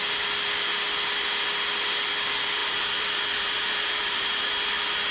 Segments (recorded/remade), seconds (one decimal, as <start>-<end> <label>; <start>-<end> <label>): 0.0-2.6 recorded; 2.6-4.3 remade; 4.3-5.1 recorded